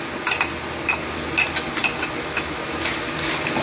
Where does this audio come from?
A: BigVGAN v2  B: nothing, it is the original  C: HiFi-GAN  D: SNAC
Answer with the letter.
B